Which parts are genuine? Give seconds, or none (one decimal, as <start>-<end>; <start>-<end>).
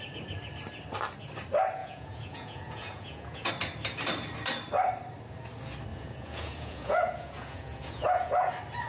0.0-1.8; 3.5-5.9; 8.5-8.9